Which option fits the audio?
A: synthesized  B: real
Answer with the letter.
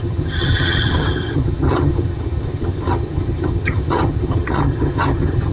A